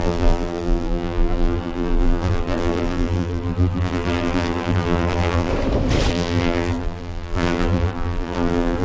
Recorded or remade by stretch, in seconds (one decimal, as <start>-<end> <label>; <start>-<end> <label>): 0.0-5.5 remade; 5.5-6.1 recorded; 6.1-8.8 remade